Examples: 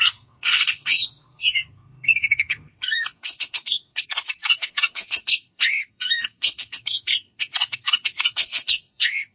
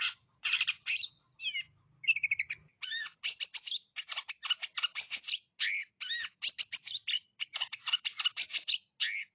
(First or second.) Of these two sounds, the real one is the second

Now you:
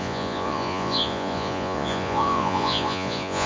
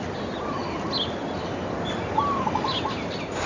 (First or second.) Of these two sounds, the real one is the second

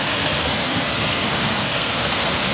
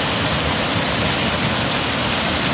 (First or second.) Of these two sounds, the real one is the second